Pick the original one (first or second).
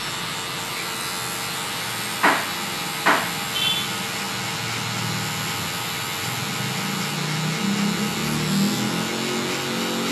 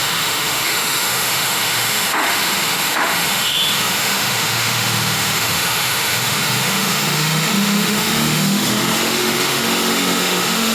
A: first